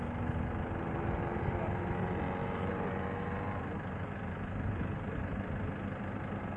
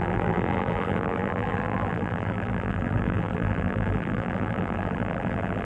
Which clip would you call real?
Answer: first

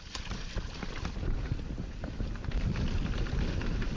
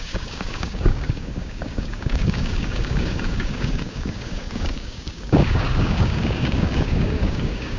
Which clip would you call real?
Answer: first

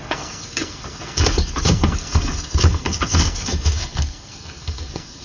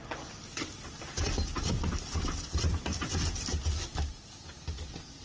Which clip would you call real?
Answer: second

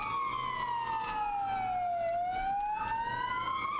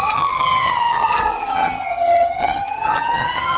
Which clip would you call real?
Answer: first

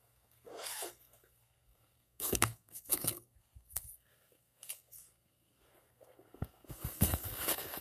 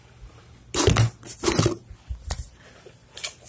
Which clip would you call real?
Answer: second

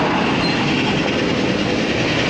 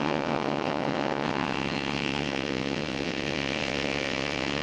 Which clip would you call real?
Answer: first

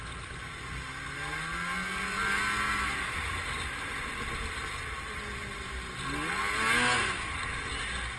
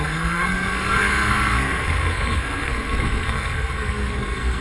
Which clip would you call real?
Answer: first